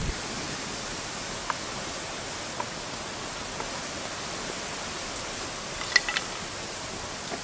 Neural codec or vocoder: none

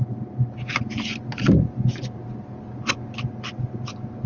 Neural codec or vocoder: none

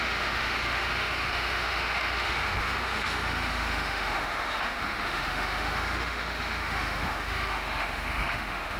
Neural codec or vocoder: autoencoder, DAC-VAE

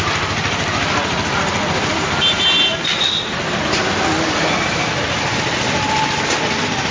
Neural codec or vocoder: none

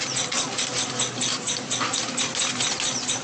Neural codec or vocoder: none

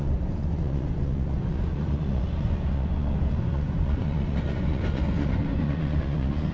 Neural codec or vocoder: vocoder, Vocos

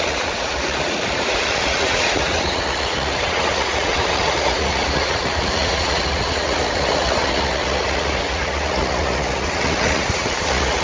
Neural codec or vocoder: vocoder, Vocos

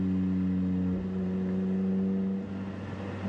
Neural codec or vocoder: none